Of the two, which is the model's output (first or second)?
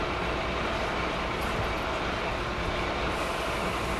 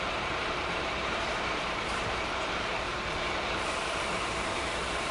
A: second